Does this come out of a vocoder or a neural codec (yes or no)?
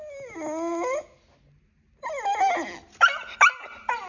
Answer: no